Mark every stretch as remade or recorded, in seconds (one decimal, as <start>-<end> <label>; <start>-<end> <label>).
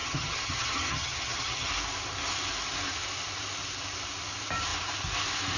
0.0-1.7 remade; 1.7-5.6 recorded